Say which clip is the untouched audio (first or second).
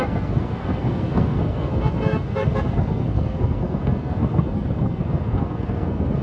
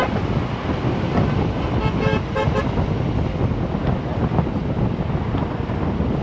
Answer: second